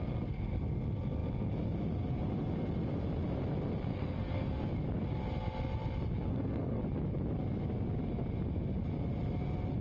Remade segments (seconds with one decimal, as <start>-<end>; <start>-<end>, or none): 3.9-4.5; 6.3-6.8